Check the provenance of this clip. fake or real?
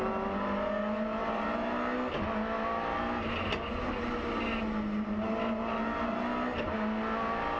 real